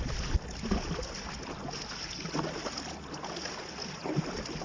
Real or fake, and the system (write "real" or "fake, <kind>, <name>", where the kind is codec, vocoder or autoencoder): real